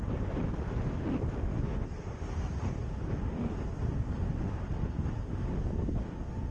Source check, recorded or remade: recorded